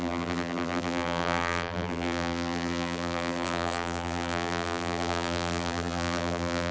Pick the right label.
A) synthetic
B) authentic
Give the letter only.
A